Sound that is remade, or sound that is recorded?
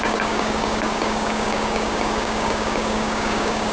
remade